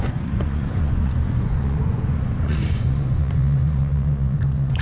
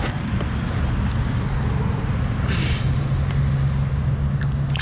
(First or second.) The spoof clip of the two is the first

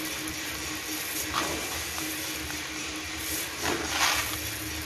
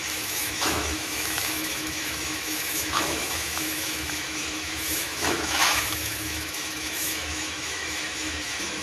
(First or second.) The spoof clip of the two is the second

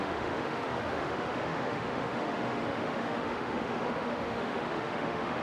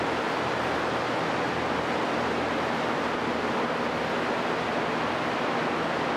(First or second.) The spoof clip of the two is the first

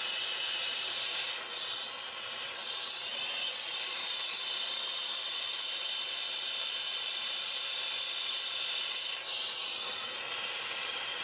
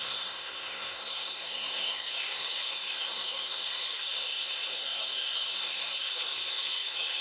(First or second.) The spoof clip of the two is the second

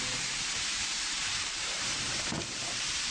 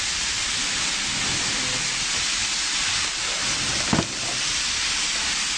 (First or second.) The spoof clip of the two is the first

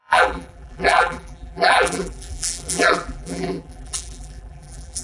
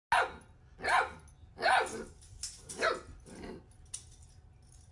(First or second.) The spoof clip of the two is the first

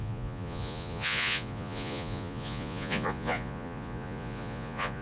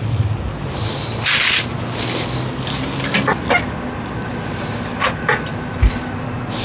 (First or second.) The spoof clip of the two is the first